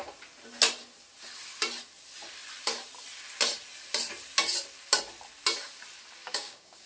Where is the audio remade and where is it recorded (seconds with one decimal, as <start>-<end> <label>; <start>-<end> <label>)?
0.0-6.2 recorded; 6.2-6.9 remade